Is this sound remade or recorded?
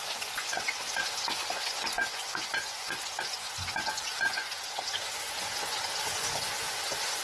remade